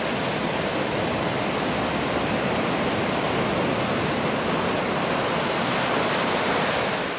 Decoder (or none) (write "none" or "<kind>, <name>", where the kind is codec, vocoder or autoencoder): none